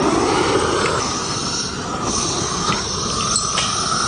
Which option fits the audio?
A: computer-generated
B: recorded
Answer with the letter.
B